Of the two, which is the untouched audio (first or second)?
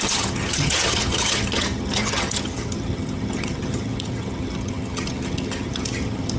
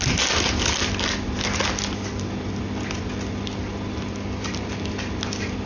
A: second